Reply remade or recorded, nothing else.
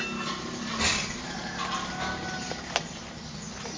recorded